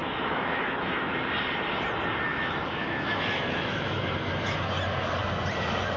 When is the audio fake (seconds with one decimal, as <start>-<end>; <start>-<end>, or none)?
0.0-1.2; 2.3-4.0